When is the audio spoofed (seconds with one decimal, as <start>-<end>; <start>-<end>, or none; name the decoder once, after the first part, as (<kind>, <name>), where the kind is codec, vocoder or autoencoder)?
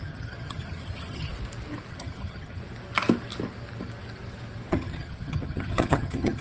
0.0-1.3 (vocoder, HiFi-GAN); 1.9-2.6; 4.7-6.4